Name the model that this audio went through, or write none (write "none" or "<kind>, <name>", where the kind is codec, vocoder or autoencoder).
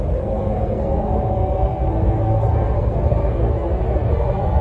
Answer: codec, SNAC